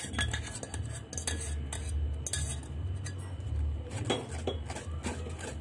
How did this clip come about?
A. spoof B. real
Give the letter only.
B